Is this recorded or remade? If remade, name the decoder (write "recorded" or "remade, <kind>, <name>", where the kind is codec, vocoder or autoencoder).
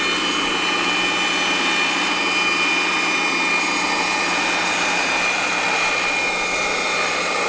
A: recorded